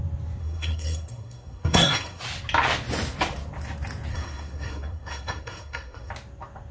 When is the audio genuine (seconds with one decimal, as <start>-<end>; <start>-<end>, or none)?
0.0-0.4; 2.2-4.1; 6.1-6.7